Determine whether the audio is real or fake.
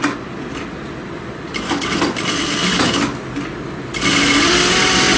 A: real